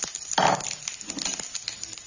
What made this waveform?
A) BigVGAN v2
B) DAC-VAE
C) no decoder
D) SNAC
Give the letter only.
C